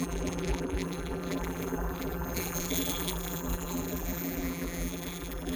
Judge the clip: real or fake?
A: fake